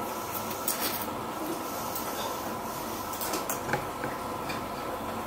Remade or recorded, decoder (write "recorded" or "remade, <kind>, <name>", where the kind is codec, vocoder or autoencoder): recorded